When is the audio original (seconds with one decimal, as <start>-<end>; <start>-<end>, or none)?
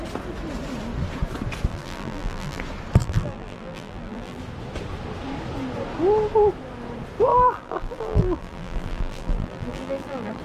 0.0-1.7; 2.6-3.0; 4.4-7.3